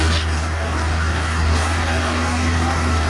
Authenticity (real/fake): fake